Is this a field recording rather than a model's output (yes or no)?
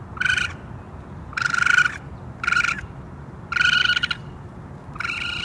yes